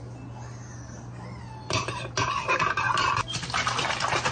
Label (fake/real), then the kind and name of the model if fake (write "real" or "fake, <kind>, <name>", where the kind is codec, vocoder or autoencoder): real